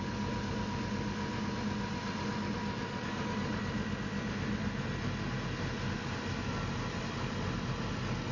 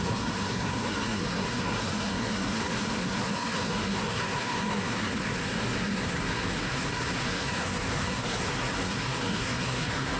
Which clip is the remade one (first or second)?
second